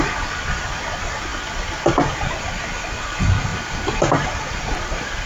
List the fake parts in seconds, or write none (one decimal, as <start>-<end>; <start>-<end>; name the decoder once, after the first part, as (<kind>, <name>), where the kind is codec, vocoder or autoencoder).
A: 3.5-5.3 (vocoder, BigVGAN v2)